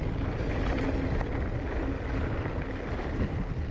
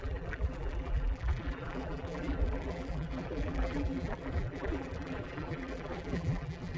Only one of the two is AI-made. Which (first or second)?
second